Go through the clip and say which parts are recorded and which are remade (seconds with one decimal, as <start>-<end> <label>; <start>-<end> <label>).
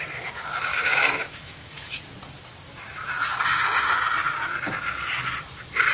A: 0.0-0.7 recorded; 0.7-2.0 remade; 2.0-5.9 recorded